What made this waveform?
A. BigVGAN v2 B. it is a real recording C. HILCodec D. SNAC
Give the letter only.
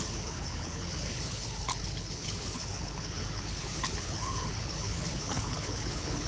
C